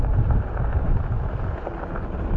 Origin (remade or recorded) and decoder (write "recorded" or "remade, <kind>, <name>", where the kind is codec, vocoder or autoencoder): remade, vocoder, BigVGAN v2